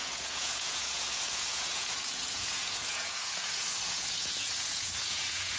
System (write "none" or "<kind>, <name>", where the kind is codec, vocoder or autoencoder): vocoder, Vocos